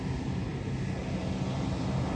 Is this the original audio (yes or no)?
yes